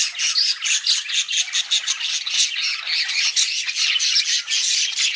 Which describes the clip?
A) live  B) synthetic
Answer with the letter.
A